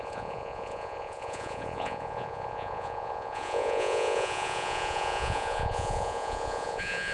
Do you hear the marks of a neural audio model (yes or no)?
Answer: yes